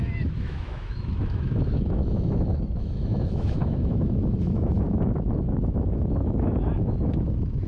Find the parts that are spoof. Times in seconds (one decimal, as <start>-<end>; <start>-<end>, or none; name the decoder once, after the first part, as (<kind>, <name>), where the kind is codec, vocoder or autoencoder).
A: 0.0-7.7 (autoencoder, DAC-VAE)

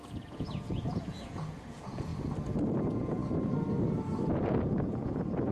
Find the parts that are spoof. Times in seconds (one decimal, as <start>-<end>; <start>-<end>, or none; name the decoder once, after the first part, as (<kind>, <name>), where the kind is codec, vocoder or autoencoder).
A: 0.0-2.1 (vocoder, Vocos); 2.8-3.2; 4.5-5.5

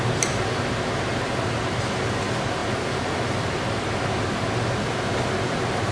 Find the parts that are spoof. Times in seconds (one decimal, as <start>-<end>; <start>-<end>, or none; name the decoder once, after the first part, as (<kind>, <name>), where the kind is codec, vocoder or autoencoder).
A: none

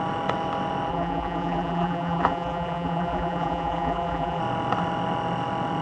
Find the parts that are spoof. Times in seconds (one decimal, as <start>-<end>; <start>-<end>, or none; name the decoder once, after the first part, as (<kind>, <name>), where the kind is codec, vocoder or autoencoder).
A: 0.9-4.4 (vocoder, BigVGAN v2)